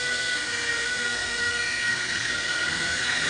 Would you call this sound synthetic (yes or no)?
yes